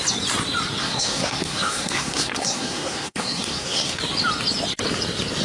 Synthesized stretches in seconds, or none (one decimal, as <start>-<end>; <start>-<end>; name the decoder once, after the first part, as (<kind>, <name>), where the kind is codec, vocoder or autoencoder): 0.8-4.0 (codec, SNAC)